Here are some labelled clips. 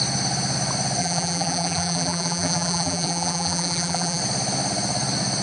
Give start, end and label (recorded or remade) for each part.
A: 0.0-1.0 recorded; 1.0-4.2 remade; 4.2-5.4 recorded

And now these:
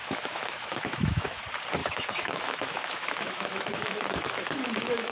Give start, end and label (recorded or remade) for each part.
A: 0.0-1.4 remade; 1.4-1.8 recorded; 1.8-5.1 remade